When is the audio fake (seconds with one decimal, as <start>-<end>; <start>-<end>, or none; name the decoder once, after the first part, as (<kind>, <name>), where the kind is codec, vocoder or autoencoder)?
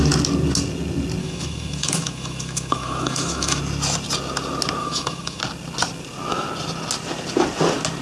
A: 1.2-3.6 (autoencoder, DAC-VAE); 4.8-5.4